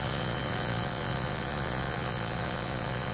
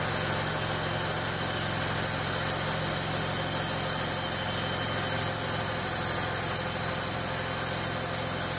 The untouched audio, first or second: second